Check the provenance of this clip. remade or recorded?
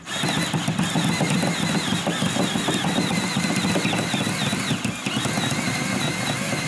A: recorded